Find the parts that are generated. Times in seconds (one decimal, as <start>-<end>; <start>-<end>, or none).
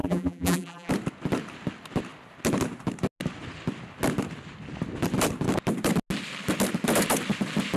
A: 0.0-0.9